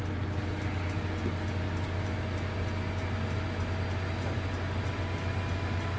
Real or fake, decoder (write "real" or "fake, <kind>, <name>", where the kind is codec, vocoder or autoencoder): real